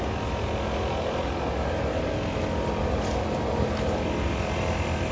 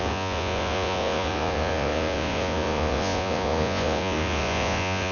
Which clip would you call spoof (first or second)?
second